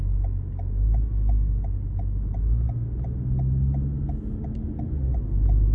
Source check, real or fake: real